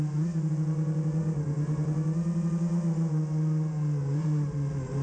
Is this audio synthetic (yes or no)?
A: no